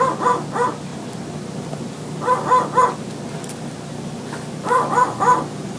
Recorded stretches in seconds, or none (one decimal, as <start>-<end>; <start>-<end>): 0.0-5.8